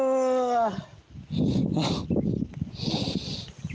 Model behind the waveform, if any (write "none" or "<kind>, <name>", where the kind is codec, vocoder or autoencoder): none